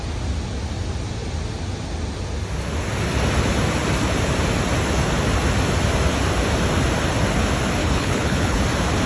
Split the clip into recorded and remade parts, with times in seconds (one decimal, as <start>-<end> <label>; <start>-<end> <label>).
0.0-7.8 recorded; 7.8-8.6 remade; 8.6-9.1 recorded